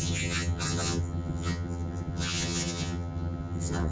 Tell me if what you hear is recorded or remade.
remade